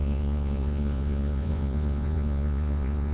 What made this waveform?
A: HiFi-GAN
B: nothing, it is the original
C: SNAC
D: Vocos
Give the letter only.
D